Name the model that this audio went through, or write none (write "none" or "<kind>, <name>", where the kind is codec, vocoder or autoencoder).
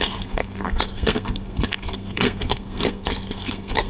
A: codec, SNAC